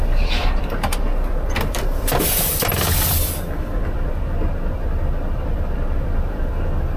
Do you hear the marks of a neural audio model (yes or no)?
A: yes